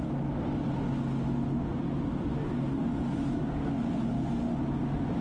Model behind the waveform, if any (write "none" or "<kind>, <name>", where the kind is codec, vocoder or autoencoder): none